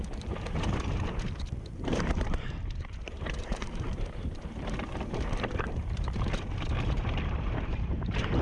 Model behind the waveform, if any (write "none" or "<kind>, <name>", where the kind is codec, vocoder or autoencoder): vocoder, BigVGAN v2